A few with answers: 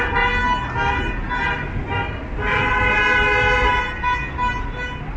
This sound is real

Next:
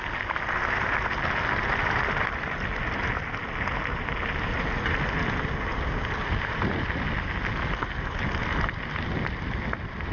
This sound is real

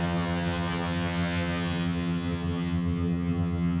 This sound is fake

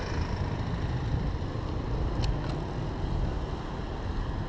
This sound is real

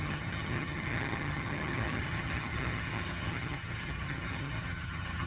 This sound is fake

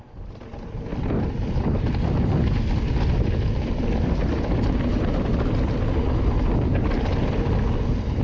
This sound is real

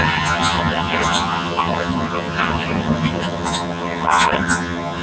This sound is fake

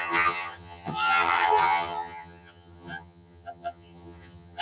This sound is fake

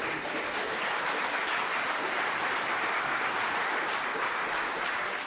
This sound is real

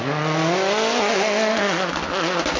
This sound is real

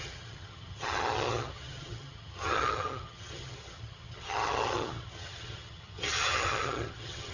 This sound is fake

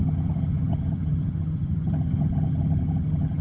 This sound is fake